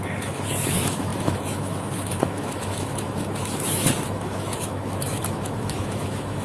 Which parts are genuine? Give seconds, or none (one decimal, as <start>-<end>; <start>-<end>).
none